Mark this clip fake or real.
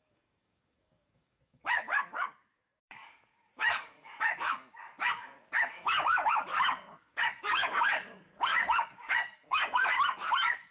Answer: fake